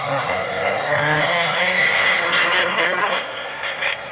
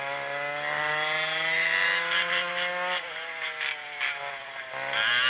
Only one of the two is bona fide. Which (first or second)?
second